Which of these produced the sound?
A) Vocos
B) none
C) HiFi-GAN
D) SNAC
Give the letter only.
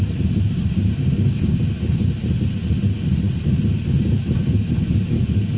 B